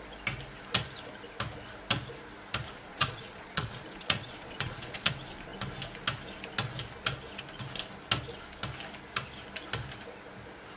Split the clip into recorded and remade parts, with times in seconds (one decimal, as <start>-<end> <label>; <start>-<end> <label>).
0.0-2.9 recorded; 2.9-5.1 remade; 5.1-10.8 recorded

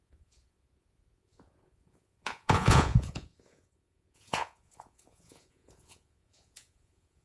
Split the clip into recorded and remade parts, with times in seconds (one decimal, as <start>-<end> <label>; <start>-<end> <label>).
0.0-7.2 remade

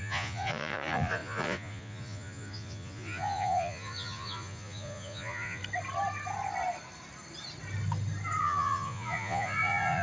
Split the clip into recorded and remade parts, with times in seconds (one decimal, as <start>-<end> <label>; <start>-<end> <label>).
0.0-5.6 remade; 5.6-8.4 recorded; 8.4-10.0 remade

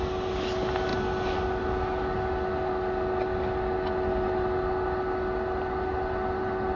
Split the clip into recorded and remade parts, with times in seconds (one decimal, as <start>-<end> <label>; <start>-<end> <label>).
0.0-6.8 recorded

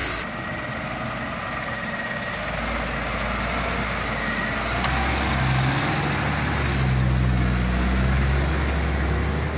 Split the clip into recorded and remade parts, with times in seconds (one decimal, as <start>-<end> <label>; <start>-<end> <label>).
0.0-9.6 recorded

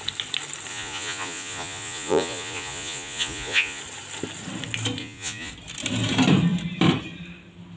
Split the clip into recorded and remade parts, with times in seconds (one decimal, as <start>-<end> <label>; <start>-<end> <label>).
0.0-0.7 recorded; 0.7-3.8 remade; 3.8-5.0 recorded; 5.0-5.5 remade; 5.5-7.8 recorded